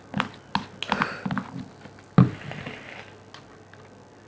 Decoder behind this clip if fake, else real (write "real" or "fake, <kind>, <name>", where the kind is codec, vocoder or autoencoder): real